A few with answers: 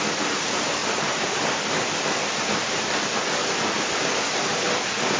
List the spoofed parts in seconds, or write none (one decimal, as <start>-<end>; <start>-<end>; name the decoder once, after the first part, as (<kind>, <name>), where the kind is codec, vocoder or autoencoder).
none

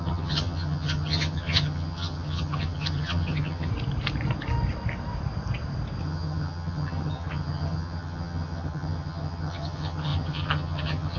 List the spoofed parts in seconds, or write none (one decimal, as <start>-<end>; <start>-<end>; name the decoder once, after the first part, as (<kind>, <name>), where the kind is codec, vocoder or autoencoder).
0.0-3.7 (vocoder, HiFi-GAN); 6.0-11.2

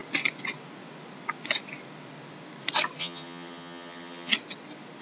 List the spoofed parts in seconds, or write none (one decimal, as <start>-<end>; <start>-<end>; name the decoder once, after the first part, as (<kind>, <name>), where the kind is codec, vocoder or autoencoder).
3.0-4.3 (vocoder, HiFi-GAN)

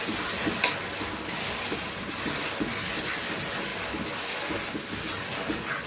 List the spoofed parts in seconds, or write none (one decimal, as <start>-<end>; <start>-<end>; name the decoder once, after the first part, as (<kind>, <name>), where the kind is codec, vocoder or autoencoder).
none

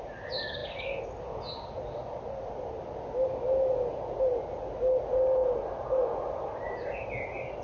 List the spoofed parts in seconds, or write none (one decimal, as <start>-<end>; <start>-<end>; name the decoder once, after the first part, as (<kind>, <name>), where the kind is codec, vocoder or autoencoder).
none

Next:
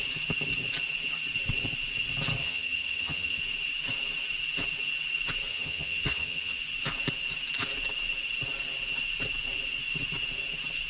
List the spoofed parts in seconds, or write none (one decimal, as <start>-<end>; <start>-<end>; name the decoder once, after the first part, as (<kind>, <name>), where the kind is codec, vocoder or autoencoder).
2.4-3.4 (vocoder, HiFi-GAN); 5.5-6.6